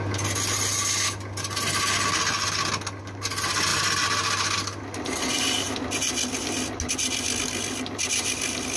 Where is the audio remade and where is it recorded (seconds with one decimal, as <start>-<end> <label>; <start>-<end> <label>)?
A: 0.0-8.8 recorded